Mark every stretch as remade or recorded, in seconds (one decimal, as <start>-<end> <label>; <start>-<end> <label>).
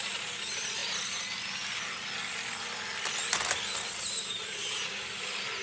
0.0-5.6 recorded